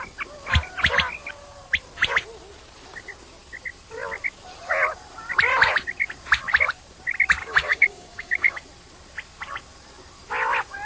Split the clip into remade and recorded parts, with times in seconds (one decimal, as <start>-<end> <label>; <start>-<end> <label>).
0.0-7.4 recorded; 7.4-8.6 remade; 8.6-10.8 recorded